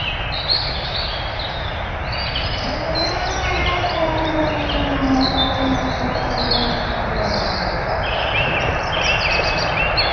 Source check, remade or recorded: recorded